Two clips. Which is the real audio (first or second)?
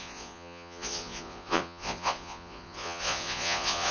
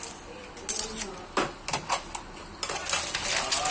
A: second